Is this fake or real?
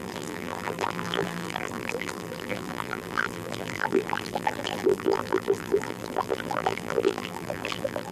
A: fake